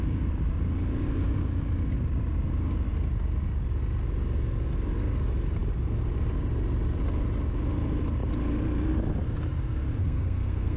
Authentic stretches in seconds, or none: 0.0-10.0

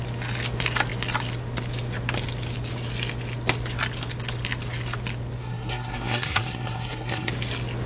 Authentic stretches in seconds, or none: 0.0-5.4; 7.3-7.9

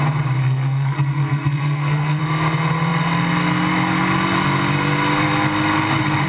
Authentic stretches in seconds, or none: 0.0-0.4; 2.2-6.3

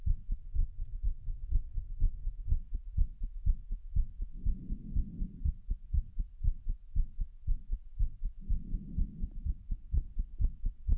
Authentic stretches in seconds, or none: 0.0-0.4; 2.6-11.0

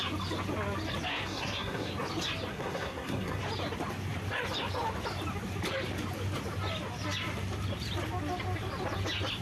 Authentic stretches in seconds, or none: 0.0-1.1; 1.9-2.5; 3.4-9.4